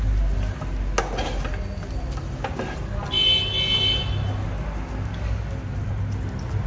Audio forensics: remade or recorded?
recorded